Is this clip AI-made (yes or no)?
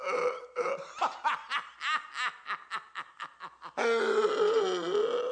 no